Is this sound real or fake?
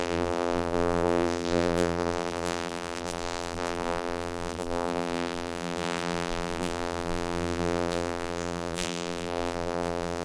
fake